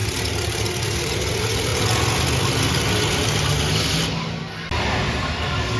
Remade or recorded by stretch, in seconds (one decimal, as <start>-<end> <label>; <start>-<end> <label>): 0.0-1.7 remade; 1.7-5.2 recorded; 5.2-5.8 remade